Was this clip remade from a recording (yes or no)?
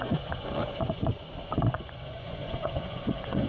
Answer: yes